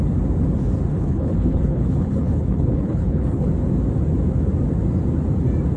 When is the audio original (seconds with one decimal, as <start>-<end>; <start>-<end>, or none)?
0.0-0.9; 3.5-5.8